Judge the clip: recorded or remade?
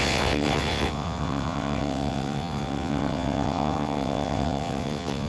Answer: remade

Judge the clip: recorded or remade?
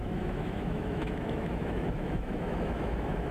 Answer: remade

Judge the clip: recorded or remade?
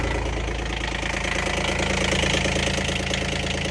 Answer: recorded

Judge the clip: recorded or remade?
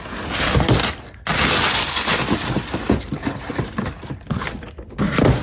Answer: recorded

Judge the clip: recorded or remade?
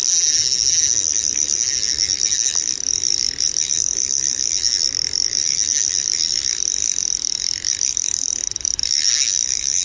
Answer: recorded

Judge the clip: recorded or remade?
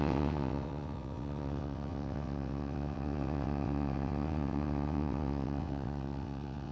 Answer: remade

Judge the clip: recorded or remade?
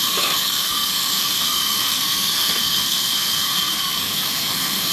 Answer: remade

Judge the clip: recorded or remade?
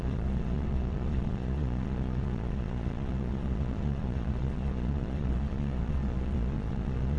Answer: remade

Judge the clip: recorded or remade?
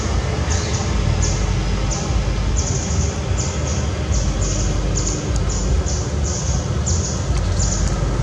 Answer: recorded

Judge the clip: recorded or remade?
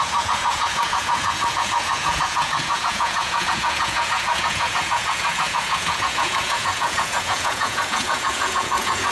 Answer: remade